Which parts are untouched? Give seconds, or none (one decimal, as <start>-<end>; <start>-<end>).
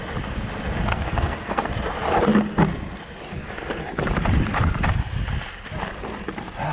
0.0-0.9; 1.7-6.7